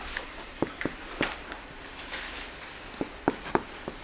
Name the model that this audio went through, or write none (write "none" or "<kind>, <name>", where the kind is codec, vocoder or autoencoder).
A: none